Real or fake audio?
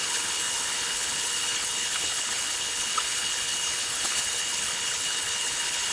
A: fake